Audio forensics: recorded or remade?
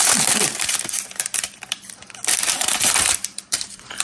remade